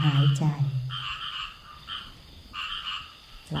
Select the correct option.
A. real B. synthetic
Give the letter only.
A